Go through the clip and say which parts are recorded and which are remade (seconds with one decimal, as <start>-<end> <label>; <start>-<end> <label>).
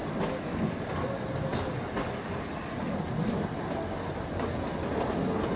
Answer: 0.0-5.6 recorded